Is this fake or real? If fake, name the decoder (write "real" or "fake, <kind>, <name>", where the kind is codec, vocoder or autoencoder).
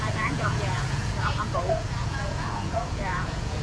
fake, vocoder, Vocos